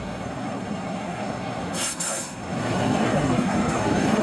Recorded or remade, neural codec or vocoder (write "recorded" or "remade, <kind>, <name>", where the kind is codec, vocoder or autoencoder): remade, codec, SNAC